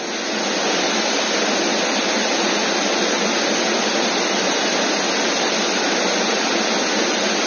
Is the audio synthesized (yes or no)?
no